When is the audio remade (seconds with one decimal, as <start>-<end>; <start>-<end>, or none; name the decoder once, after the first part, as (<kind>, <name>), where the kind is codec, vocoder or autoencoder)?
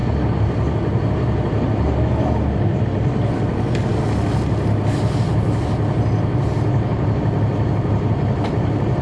none